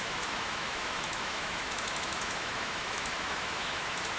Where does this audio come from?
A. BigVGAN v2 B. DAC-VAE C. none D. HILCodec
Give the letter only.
B